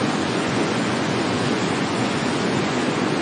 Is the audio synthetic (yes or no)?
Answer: yes